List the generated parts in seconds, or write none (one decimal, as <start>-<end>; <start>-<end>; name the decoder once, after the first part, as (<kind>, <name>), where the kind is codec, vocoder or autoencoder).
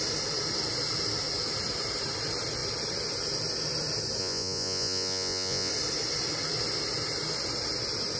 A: 4.2-5.7 (vocoder, Vocos)